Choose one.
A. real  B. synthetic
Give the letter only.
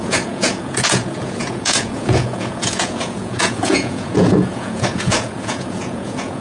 B